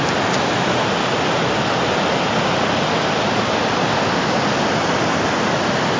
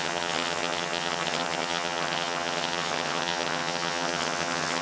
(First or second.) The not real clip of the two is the second